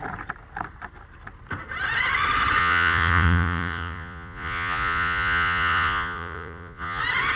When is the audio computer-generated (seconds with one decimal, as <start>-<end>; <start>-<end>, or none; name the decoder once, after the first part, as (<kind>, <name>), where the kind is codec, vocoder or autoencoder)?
2.6-7.0 (vocoder, Vocos)